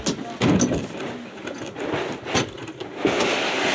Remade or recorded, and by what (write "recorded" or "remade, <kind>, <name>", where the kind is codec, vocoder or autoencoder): recorded